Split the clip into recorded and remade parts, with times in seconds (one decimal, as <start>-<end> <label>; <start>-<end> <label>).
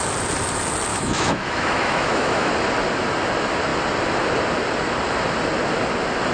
0.0-0.9 recorded; 0.9-2.5 remade; 2.5-6.3 recorded